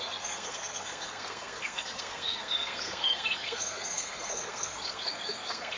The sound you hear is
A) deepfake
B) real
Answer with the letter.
A